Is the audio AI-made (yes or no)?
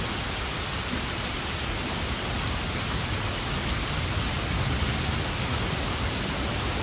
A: no